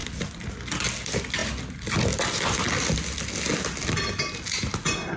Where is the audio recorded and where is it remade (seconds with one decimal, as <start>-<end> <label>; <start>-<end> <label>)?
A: 0.0-5.2 recorded